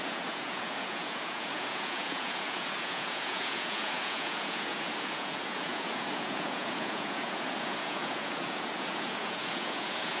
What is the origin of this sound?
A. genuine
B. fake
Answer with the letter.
B